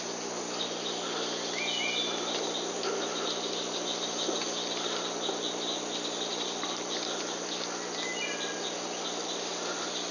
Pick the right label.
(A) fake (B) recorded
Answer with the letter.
B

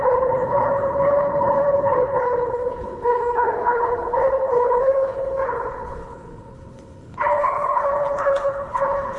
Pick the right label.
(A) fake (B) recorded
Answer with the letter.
A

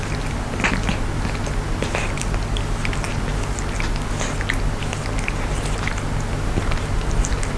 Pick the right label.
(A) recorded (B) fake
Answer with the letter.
A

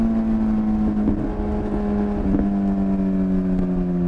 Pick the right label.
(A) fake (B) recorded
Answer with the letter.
B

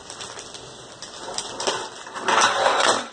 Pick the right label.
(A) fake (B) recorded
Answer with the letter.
B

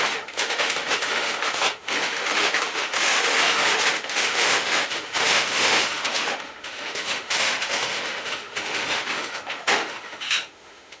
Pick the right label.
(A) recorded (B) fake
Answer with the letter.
B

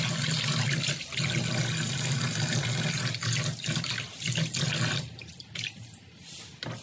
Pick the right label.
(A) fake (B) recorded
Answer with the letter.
B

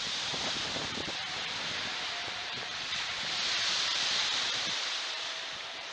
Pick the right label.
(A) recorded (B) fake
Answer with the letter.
B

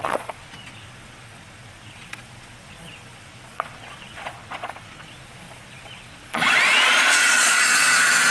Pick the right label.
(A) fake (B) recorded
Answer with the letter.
A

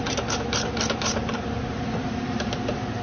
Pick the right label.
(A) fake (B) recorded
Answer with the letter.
A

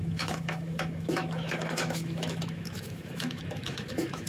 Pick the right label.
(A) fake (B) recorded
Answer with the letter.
A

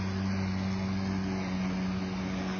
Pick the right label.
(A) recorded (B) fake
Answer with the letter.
A